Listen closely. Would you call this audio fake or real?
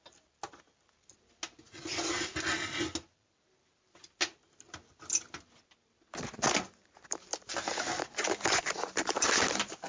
real